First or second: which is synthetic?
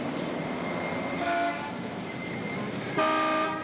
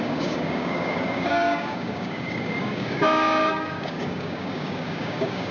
second